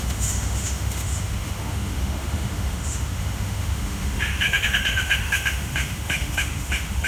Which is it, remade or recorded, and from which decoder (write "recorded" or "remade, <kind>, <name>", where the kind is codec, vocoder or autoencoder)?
remade, autoencoder, DAC-VAE